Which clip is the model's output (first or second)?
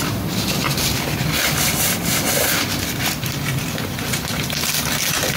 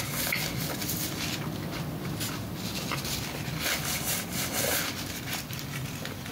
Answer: first